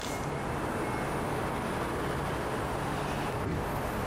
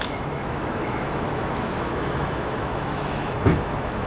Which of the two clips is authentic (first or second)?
first